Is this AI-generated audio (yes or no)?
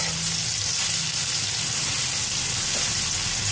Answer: no